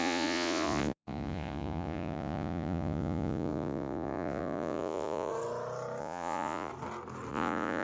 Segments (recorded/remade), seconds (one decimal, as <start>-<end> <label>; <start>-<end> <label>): 0.0-5.3 remade; 5.3-6.0 recorded; 6.0-6.7 remade; 6.7-7.3 recorded; 7.3-7.8 remade